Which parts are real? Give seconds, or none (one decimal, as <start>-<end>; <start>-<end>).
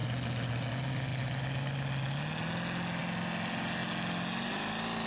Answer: 0.0-5.1